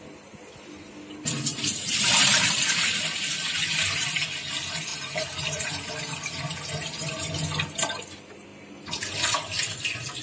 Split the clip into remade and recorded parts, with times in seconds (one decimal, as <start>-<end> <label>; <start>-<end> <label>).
0.0-1.5 recorded; 1.5-4.2 remade; 4.2-4.9 recorded; 4.9-5.9 remade; 5.9-10.2 recorded